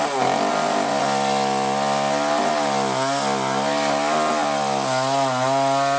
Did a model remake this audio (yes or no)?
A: no